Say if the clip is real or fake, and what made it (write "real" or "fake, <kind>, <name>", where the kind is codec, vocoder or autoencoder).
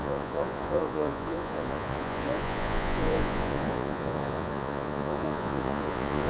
fake, vocoder, Vocos